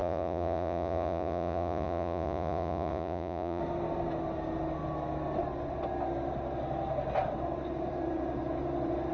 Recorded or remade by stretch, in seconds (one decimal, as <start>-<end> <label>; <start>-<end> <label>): 0.0-3.6 remade; 3.6-9.1 recorded